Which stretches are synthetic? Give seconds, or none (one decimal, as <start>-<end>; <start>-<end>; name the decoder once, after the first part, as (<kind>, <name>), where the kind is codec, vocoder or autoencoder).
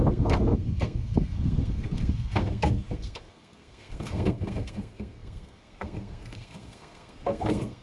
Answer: 0.0-7.8 (codec, SNAC)